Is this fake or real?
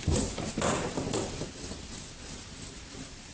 real